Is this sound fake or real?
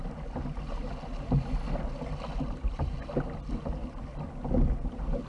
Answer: real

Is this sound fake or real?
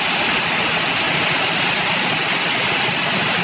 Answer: real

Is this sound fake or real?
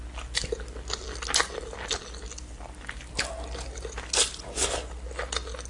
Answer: real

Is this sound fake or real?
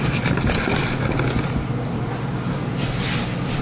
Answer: real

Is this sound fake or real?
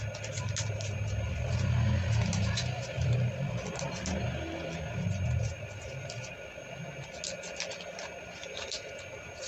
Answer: real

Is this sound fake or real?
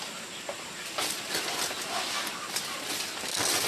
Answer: real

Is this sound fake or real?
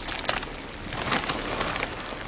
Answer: real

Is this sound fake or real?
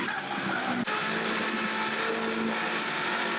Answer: real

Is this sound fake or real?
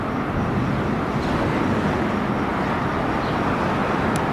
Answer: real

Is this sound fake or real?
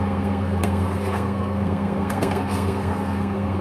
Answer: fake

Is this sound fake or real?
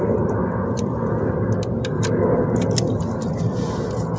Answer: real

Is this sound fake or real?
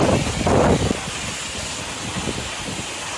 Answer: real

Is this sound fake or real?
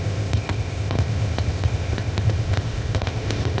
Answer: fake